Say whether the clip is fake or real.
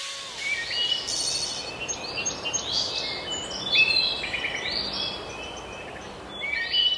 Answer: real